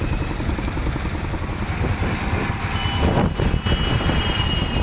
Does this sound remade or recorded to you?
recorded